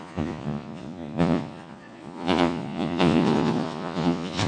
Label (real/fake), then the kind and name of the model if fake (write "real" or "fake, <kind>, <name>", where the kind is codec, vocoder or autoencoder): fake, vocoder, Vocos